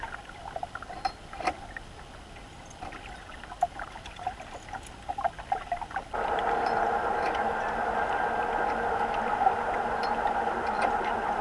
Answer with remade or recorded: recorded